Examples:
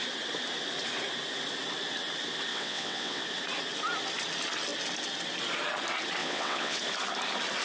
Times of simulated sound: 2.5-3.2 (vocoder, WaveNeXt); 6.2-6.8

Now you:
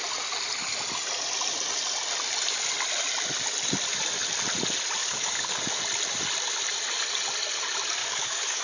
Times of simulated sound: 5.0-5.8 (codec, DAC); 8.0-8.6

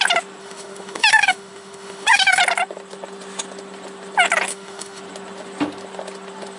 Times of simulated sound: 0.4-2.4 (autoencoder, DAC-VAE); 4.5-5.0